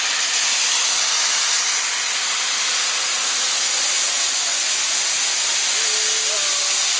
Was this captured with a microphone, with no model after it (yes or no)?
yes